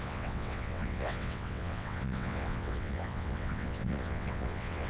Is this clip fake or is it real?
fake